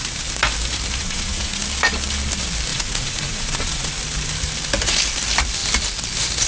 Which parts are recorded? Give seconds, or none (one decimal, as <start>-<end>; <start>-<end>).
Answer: 0.0-1.0; 1.6-2.7; 3.9-6.5